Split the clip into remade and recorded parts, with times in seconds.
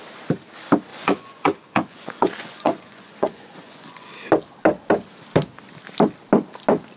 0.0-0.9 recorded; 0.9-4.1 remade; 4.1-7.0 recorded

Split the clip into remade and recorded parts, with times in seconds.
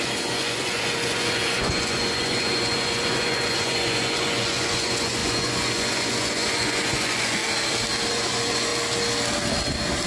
0.0-7.4 remade; 7.4-8.1 recorded; 8.1-8.7 remade; 8.7-10.1 recorded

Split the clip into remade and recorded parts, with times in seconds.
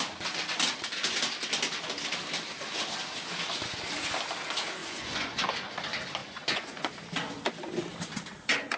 0.0-4.8 recorded; 4.8-5.8 remade; 5.8-6.2 recorded; 6.2-6.9 remade; 6.9-8.8 recorded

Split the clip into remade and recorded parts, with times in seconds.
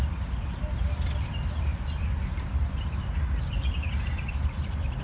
0.0-5.0 recorded